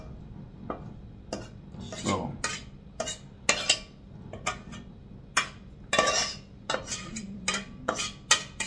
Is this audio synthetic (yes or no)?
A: no